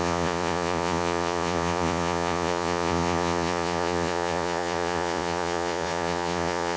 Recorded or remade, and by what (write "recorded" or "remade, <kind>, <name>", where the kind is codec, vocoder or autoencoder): remade, vocoder, Vocos